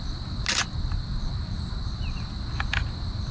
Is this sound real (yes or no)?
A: yes